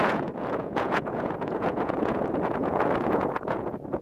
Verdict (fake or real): fake